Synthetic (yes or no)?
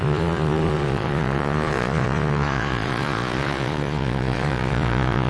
yes